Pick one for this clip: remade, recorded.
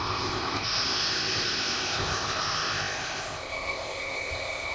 remade